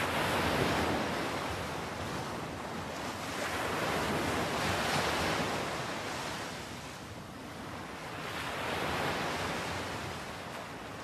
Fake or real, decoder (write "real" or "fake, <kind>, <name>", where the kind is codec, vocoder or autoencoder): real